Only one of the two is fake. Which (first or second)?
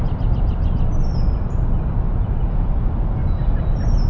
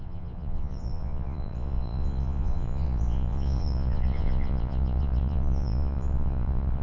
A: second